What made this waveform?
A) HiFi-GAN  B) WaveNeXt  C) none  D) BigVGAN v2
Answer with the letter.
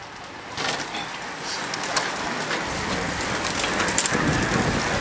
C